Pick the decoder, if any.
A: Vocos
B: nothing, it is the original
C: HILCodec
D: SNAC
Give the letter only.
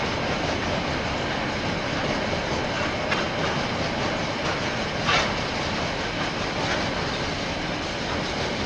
B